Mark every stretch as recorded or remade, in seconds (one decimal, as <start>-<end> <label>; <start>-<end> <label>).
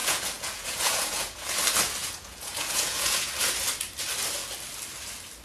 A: 0.0-1.6 remade; 1.6-2.0 recorded; 2.0-3.3 remade; 3.3-5.4 recorded